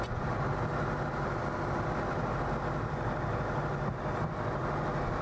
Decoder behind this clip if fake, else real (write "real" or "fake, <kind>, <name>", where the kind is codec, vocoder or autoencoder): real